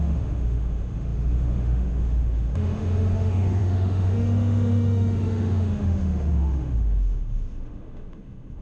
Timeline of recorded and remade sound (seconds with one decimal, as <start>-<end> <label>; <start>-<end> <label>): 0.0-8.6 remade